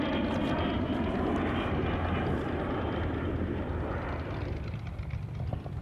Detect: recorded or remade recorded